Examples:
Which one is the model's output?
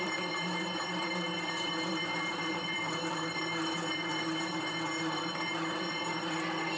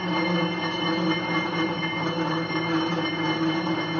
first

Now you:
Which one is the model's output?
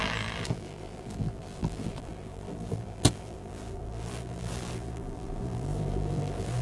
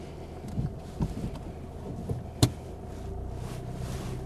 first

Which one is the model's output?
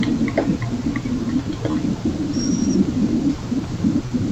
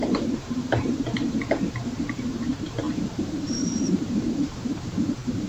second